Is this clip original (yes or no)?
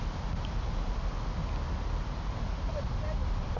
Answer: yes